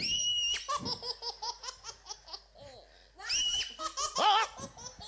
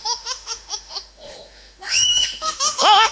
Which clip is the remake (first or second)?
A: second